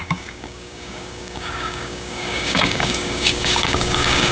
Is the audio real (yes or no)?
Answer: no